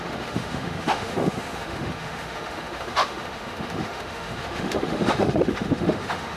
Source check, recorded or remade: remade